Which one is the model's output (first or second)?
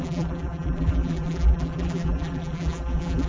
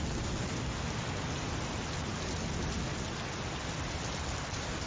first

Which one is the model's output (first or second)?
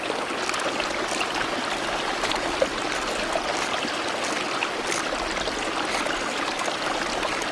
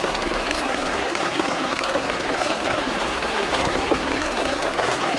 second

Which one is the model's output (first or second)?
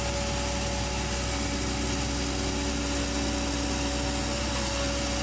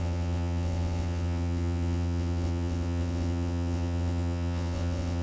second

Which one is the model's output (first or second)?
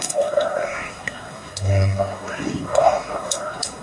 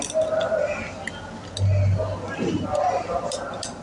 first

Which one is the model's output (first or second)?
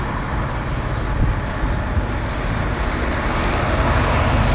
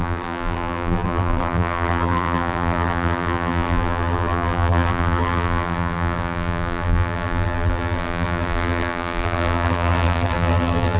second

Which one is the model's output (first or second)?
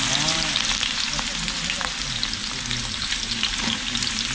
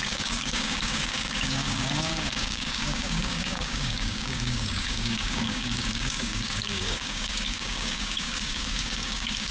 second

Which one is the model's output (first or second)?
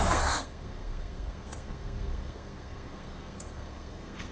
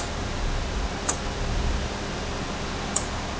first